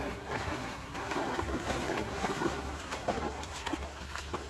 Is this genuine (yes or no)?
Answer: no